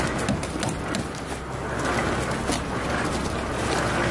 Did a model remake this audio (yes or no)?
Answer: no